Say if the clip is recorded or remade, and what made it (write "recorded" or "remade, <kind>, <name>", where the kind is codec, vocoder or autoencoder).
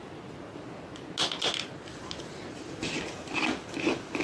recorded